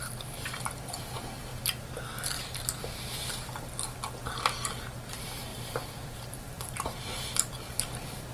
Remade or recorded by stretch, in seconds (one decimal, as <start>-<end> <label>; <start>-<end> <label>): 0.0-5.5 recorded; 5.5-7.5 remade; 7.5-8.3 recorded